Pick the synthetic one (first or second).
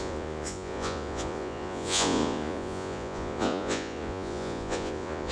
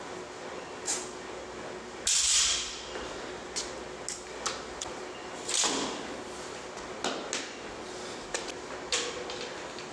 first